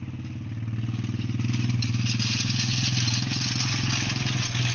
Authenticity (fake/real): real